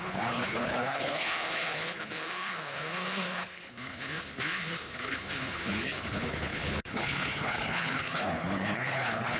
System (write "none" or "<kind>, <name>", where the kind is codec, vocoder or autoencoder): codec, HILCodec